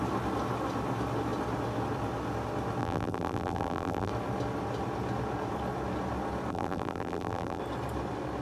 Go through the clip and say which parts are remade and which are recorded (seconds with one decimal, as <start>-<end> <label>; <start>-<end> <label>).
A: 0.0-2.8 recorded; 2.8-4.1 remade; 4.1-6.5 recorded; 6.5-7.6 remade; 7.6-8.4 recorded